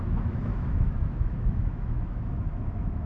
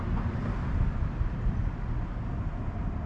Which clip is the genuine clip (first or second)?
second